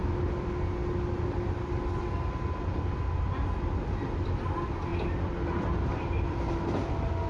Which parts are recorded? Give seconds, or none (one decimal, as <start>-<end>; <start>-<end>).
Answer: 0.0-7.3